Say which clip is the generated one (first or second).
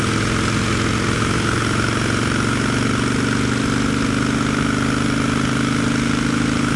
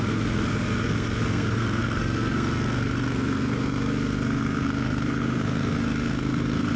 second